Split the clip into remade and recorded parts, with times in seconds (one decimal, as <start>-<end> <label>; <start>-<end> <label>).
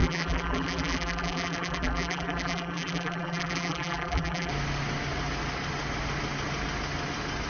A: 0.0-4.5 remade; 4.5-7.5 recorded